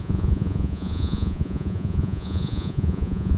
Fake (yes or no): yes